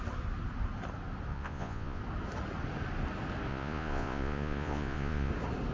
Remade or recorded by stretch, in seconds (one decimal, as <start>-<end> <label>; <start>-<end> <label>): 0.0-1.3 recorded; 1.3-2.0 remade; 2.0-3.5 recorded; 3.5-5.3 remade; 5.3-5.7 recorded